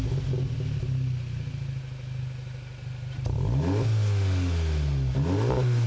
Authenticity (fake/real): real